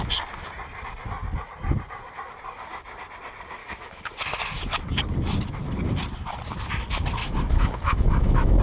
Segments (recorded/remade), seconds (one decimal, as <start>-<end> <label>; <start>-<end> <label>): 0.0-3.6 recorded; 3.6-4.1 remade; 4.1-7.2 recorded; 7.2-8.6 remade